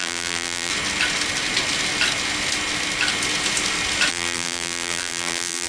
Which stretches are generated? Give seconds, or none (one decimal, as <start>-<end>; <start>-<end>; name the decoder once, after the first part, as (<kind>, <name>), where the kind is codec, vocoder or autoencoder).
0.0-0.7 (vocoder, BigVGAN v2); 4.1-5.7